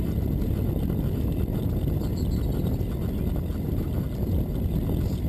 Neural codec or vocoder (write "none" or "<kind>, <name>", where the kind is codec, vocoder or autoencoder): none